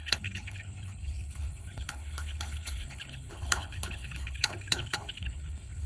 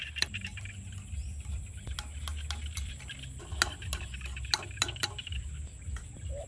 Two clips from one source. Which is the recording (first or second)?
second